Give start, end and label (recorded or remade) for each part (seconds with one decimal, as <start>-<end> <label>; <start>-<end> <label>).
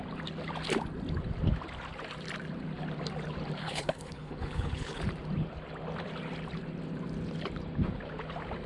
0.0-3.6 recorded; 3.6-5.0 remade; 5.0-8.7 recorded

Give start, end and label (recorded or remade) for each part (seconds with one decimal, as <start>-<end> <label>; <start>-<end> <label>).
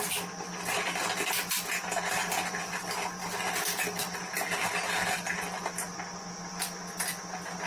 0.0-7.7 recorded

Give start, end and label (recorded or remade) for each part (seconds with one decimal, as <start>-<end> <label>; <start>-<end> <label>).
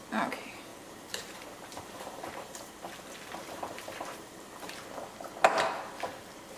0.0-0.7 recorded; 0.7-4.7 remade; 4.7-6.6 recorded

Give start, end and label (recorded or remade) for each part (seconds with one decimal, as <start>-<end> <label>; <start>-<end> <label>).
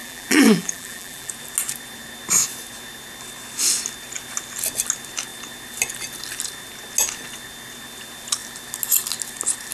0.0-1.3 remade; 1.3-9.7 recorded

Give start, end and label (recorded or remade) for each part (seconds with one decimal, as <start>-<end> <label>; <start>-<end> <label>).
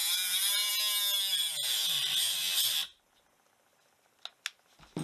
0.0-0.7 remade; 0.7-5.0 recorded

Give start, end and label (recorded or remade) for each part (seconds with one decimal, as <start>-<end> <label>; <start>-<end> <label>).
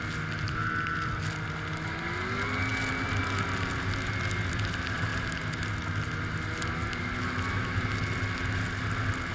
0.0-9.3 recorded